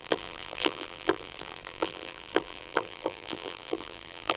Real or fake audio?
fake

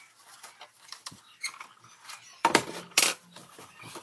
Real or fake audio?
fake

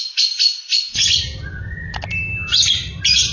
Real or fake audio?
real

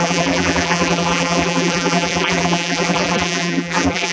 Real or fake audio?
fake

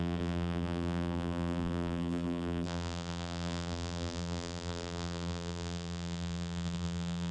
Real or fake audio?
fake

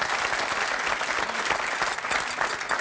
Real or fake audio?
real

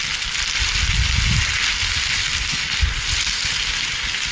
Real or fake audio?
real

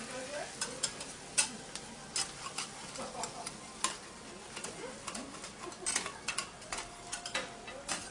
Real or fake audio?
real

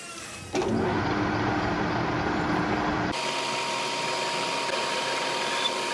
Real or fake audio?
real